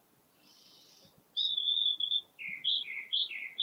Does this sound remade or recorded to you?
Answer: recorded